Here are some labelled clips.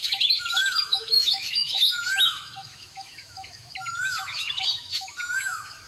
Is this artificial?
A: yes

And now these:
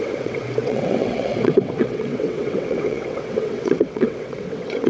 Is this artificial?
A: yes